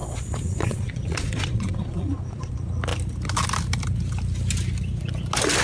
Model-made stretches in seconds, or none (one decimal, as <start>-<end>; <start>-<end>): 0.0-2.5